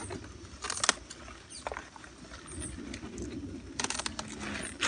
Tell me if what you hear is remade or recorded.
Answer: recorded